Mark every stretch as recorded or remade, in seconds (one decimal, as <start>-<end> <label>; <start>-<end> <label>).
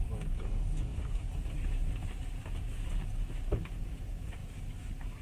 0.0-0.9 remade; 0.9-3.7 recorded; 3.7-4.4 remade; 4.4-5.2 recorded